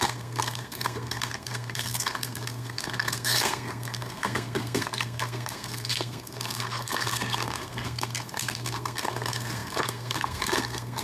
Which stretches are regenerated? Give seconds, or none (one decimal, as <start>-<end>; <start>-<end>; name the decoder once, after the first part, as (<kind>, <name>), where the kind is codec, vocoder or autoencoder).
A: 0.0-11.0 (codec, SNAC)